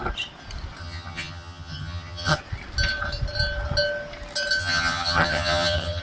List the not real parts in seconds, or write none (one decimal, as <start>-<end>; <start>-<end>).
0.8-2.4; 4.6-6.0